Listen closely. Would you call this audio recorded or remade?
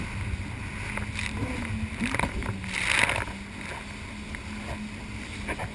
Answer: recorded